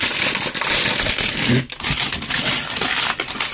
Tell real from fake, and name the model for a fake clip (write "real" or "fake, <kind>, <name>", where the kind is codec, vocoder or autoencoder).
real